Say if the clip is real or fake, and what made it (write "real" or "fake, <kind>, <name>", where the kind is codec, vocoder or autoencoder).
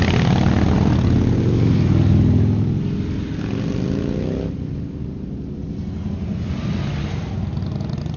real